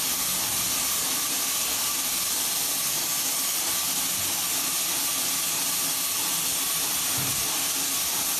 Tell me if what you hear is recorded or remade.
recorded